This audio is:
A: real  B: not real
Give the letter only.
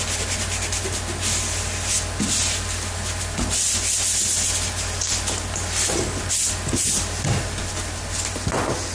A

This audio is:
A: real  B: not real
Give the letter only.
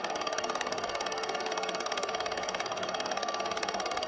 B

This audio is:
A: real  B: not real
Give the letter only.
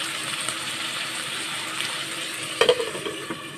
B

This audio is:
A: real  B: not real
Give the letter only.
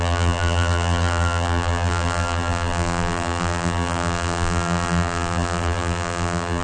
B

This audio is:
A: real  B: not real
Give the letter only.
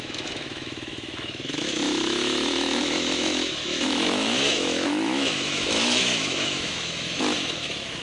B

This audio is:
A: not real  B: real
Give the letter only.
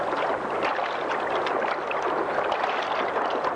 B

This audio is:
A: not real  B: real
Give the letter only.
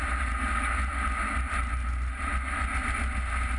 B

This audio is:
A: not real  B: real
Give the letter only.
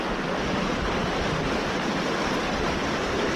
A